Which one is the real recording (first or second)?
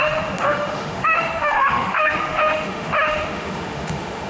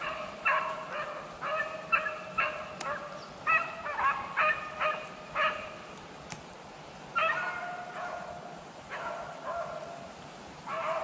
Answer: second